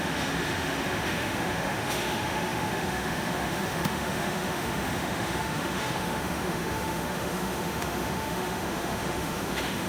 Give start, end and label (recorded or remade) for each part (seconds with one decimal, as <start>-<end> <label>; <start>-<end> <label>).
0.0-9.9 remade